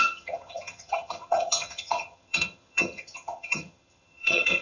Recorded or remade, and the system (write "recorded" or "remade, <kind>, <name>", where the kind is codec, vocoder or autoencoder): remade, vocoder, HiFi-GAN